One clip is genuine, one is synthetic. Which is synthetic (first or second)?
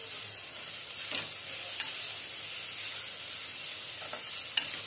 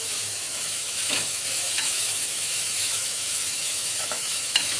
second